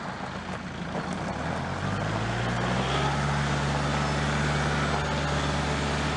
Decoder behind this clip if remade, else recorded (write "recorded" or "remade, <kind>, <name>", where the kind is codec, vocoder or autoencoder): recorded